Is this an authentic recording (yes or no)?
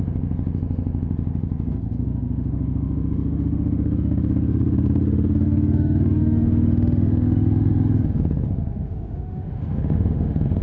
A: no